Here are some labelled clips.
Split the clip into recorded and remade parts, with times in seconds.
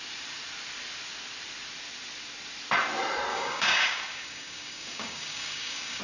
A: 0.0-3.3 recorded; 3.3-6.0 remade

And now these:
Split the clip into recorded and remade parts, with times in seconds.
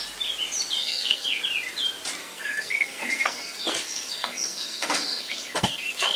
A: 0.0-0.8 recorded; 0.8-1.4 remade; 1.4-2.2 recorded; 2.2-6.2 remade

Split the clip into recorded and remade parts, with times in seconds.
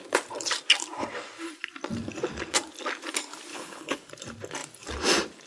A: 0.0-3.5 recorded; 3.5-4.1 remade; 4.1-5.5 recorded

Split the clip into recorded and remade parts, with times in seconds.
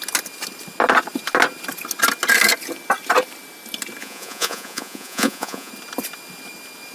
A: 0.0-4.0 recorded; 4.0-5.7 remade; 5.7-6.9 recorded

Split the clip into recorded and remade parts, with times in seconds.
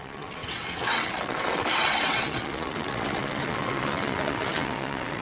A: 0.0-5.2 remade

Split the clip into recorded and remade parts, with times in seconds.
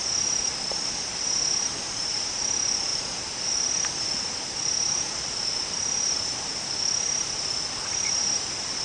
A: 0.0-8.8 recorded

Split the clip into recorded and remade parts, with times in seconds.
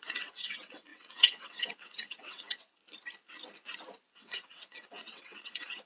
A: 0.0-2.8 remade; 2.8-4.1 recorded; 4.1-5.9 remade